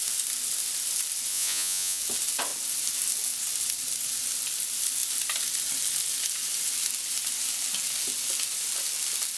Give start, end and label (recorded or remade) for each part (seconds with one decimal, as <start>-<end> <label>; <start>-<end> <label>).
0.0-1.3 recorded; 1.3-2.0 remade; 2.0-9.4 recorded

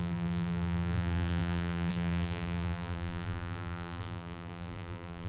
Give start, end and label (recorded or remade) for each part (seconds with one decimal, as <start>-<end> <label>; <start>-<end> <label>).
0.0-5.3 remade

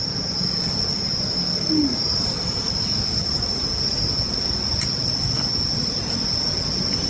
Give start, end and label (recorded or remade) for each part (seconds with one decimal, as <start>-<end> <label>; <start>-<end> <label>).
0.0-7.1 recorded

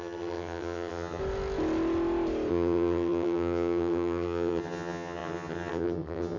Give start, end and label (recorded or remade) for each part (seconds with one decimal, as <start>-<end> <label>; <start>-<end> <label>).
0.0-1.2 remade; 1.2-2.5 recorded; 2.5-6.4 remade